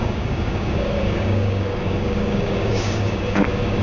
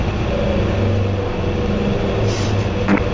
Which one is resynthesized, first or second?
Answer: first